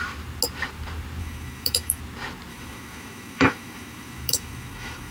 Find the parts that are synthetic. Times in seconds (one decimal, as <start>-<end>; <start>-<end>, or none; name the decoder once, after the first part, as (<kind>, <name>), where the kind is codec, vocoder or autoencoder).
1.2-2.0 (autoencoder, DAC-VAE); 2.5-5.1